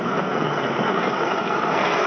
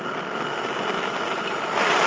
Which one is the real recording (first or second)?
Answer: second